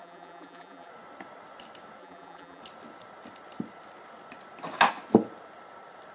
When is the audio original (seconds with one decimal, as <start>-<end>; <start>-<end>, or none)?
0.9-2.0; 2.6-6.1

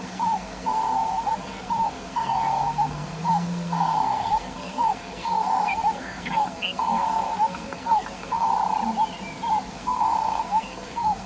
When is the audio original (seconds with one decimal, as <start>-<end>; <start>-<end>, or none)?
8.5-9.7

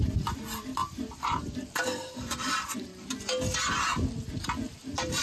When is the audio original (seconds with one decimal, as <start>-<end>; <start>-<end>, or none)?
2.9-4.7

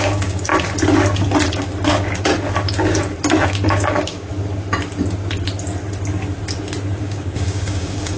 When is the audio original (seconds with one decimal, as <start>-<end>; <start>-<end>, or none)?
0.5-1.9; 2.3-3.5; 4.3-7.0

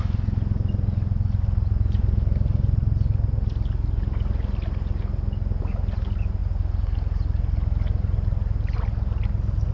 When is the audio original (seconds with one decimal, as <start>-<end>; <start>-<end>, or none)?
0.0-9.7